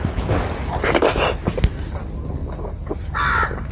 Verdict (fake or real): real